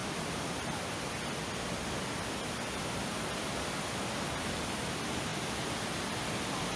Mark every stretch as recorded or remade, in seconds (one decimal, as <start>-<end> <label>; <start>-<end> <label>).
0.0-5.3 recorded; 5.3-6.0 remade; 6.0-6.8 recorded